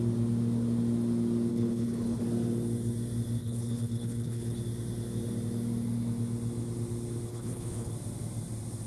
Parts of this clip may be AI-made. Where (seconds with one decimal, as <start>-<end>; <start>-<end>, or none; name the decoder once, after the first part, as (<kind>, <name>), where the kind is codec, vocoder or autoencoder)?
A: 1.5-2.2 (codec, HILCodec); 3.4-4.6; 7.3-7.9

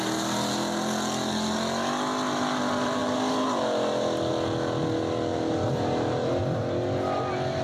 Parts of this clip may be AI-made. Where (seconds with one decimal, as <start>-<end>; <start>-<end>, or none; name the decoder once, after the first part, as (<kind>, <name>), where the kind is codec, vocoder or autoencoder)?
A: none

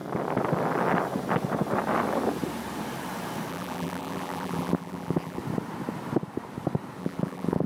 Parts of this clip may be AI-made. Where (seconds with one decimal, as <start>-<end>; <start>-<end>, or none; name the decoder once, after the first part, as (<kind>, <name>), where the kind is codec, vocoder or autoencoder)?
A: 3.5-5.4 (vocoder, BigVGAN v2); 7.0-7.7